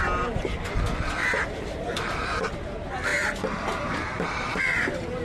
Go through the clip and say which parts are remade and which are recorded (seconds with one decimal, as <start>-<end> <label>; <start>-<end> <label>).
0.0-1.2 recorded; 1.2-2.3 remade; 2.3-3.1 recorded; 3.1-4.6 remade; 4.6-5.2 recorded